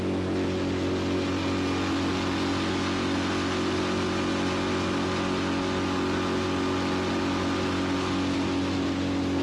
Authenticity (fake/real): real